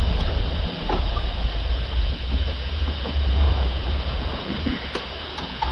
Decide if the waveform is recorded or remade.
remade